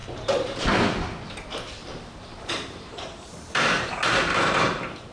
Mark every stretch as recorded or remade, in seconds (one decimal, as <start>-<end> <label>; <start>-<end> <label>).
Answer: 0.0-0.6 remade; 0.6-1.8 recorded; 1.8-3.9 remade; 3.9-4.3 recorded; 4.3-5.1 remade